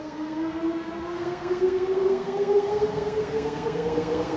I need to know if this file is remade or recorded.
remade